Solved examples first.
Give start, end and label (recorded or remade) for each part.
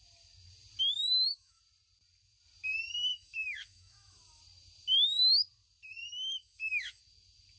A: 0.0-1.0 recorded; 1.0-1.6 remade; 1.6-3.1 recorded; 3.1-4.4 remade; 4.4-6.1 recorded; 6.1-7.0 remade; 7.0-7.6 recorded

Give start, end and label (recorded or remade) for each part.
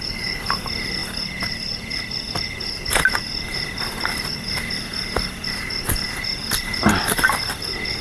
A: 0.0-8.0 recorded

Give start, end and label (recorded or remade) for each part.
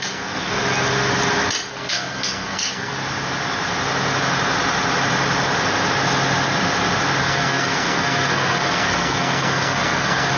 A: 0.0-0.6 remade; 0.6-1.7 recorded; 1.7-2.9 remade; 2.9-7.2 recorded; 7.2-10.4 remade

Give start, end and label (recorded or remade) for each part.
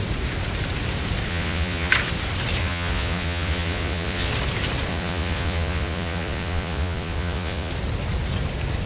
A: 0.0-1.3 recorded; 1.3-1.9 remade; 1.9-2.6 recorded; 2.6-4.3 remade; 4.3-4.9 recorded; 4.9-7.7 remade; 7.7-8.9 recorded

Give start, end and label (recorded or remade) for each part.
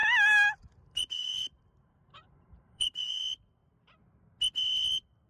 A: 0.0-3.2 remade; 3.2-5.3 recorded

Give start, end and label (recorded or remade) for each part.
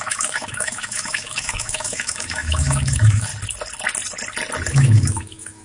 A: 0.0-3.3 remade; 3.3-4.7 recorded; 4.7-5.6 remade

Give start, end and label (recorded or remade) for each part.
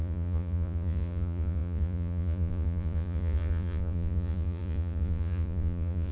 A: 0.0-6.1 remade